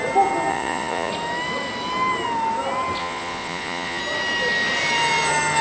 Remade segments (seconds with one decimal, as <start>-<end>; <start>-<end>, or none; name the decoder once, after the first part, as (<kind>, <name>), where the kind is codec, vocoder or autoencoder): 0.5-1.1 (vocoder, Vocos); 3.0-4.0